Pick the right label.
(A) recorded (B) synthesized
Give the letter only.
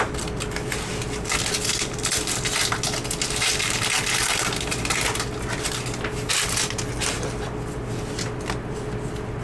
A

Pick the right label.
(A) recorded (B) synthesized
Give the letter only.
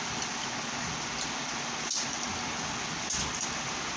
A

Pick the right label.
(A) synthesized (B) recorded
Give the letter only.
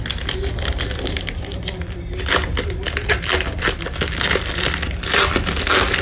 B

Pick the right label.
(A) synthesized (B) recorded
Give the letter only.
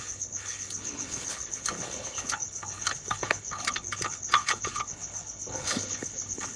A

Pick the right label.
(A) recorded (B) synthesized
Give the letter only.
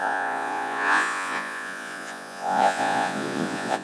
B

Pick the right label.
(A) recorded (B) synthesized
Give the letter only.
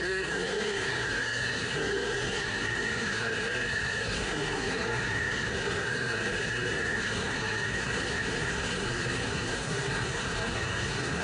B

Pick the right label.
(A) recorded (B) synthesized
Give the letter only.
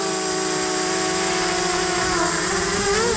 A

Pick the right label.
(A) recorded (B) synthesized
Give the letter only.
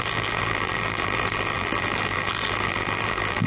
B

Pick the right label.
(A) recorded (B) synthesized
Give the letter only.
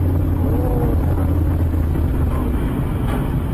A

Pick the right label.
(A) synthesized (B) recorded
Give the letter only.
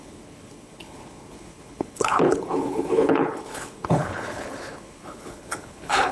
A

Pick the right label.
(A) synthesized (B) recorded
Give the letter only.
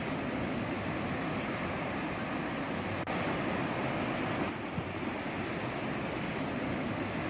B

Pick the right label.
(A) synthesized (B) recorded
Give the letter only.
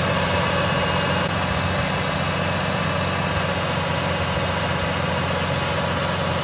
B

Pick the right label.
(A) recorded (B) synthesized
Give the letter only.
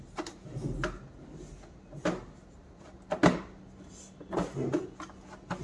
A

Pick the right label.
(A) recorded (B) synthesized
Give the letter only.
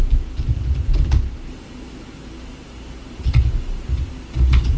A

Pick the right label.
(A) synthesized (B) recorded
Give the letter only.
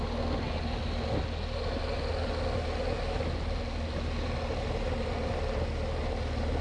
B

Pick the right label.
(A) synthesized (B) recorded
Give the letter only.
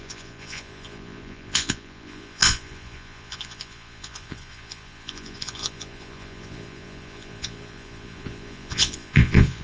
A